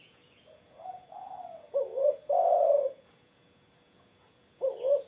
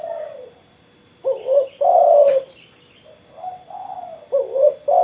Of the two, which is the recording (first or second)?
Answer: second